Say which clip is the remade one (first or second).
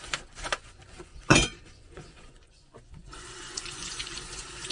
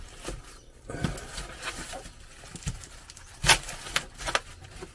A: first